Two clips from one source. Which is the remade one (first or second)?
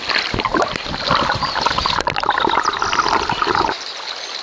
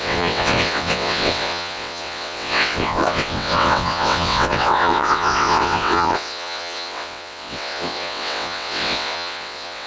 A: second